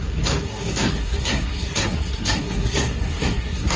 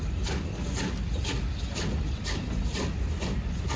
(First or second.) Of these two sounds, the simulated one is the first